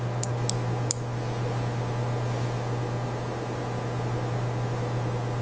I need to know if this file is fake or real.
real